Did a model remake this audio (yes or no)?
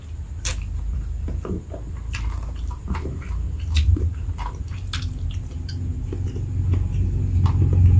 no